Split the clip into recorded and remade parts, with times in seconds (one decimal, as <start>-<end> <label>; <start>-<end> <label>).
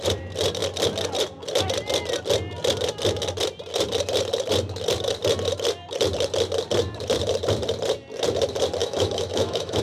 0.0-8.8 recorded; 8.8-9.8 remade